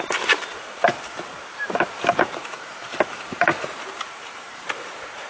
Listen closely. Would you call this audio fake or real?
fake